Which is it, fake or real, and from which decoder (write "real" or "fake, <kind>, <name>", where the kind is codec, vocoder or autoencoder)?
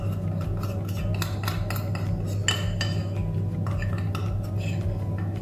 real